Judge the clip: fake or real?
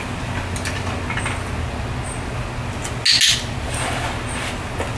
real